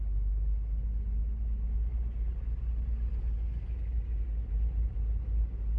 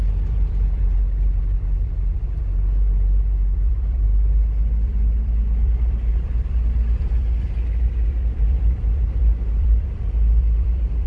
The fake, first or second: second